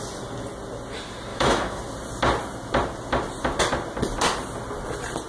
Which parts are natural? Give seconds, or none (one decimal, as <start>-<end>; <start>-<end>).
0.0-1.3; 1.8-5.3